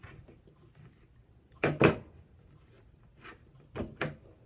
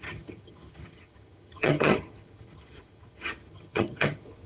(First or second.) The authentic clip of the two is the first